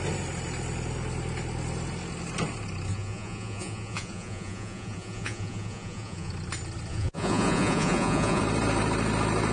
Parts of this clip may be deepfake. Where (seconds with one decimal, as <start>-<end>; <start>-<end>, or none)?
2.9-6.3; 6.9-8.4